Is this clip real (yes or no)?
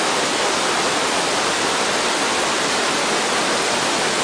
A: yes